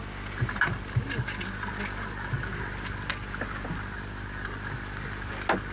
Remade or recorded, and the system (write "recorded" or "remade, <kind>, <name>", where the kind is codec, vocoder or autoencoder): recorded